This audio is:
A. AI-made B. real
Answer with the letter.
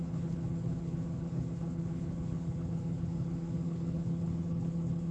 A